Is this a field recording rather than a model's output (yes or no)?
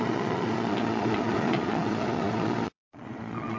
no